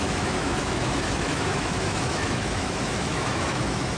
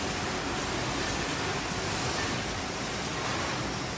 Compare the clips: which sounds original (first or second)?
second